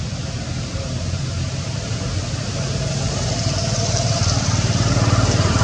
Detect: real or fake real